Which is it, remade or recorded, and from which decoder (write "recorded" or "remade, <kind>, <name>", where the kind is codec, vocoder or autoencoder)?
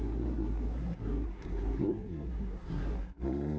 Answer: remade, codec, SNAC